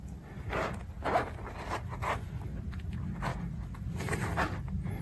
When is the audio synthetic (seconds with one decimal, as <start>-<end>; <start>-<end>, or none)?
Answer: none